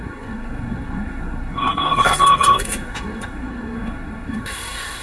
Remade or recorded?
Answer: remade